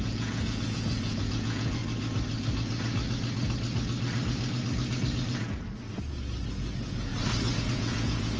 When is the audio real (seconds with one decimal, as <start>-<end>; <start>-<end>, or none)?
1.8-6.5; 7.1-7.6